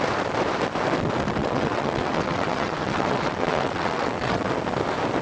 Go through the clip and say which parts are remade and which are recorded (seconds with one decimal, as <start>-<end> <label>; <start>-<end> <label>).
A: 0.0-1.4 recorded; 1.4-4.5 remade; 4.5-5.2 recorded

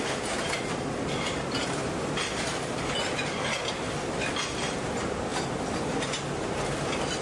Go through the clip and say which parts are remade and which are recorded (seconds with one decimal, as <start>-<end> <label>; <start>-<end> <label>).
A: 0.0-7.2 recorded

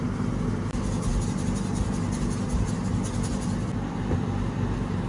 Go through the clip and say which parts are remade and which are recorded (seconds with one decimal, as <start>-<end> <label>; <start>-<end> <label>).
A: 0.0-5.1 recorded

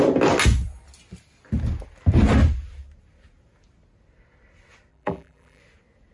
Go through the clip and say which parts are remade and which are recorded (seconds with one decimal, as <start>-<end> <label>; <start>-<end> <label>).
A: 0.0-4.9 recorded; 4.9-5.6 remade; 5.6-6.1 recorded

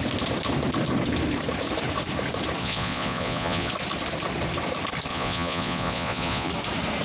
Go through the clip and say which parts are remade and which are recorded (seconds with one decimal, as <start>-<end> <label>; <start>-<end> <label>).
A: 0.0-2.6 recorded; 2.6-3.7 remade; 3.7-5.1 recorded; 5.1-6.5 remade; 6.5-7.0 recorded

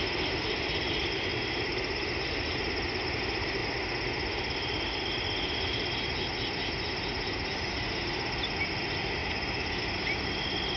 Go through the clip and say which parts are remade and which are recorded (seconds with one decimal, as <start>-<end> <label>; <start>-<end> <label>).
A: 0.0-1.3 recorded; 1.3-3.2 remade; 3.2-9.2 recorded; 9.2-9.8 remade; 9.8-10.8 recorded